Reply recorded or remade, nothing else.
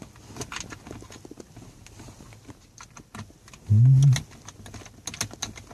recorded